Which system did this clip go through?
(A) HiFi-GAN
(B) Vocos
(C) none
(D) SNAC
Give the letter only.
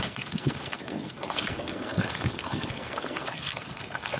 D